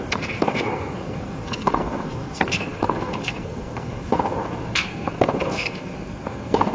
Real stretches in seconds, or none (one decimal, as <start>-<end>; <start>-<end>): none